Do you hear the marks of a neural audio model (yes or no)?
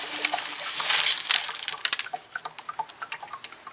no